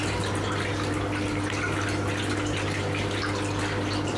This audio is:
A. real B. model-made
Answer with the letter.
A